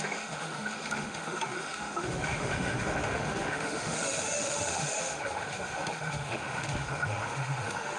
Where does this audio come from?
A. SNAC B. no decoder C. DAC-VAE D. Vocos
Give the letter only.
C